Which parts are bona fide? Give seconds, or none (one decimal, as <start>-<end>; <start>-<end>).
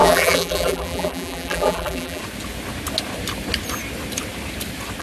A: 2.2-5.0